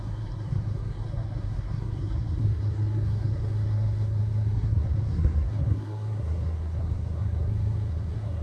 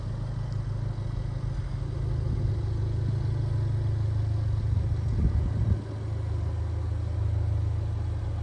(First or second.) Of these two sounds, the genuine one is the second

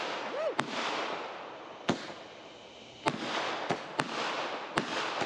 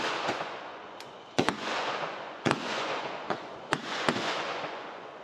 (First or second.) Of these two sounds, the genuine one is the first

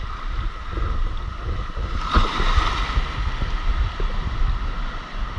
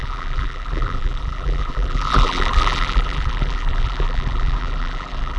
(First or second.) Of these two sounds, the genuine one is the first